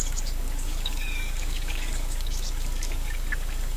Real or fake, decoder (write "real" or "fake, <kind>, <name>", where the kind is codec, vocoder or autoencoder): fake, codec, DAC